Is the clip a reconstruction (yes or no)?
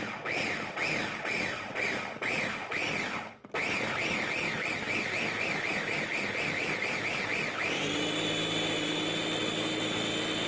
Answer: no